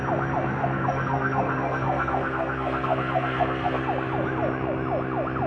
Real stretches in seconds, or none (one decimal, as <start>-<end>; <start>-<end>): 0.0-0.5; 3.8-5.5